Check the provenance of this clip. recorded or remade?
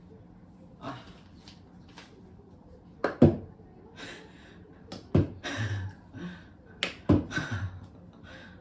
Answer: recorded